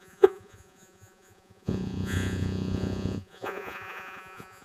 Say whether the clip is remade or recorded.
remade